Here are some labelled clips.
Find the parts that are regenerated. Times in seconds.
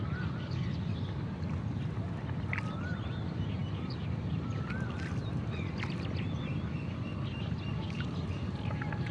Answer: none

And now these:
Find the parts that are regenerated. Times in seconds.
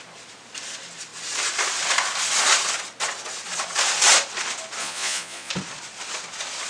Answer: 4.8-5.5 (vocoder, Vocos)